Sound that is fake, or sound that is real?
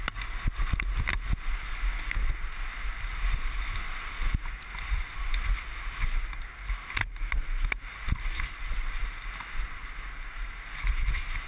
real